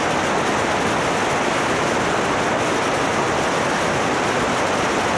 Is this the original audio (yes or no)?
yes